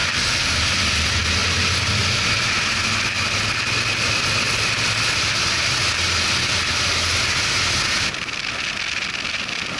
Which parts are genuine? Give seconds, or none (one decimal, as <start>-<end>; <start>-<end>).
0.0-9.8